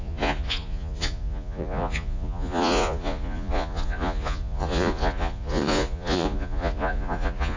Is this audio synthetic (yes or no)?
yes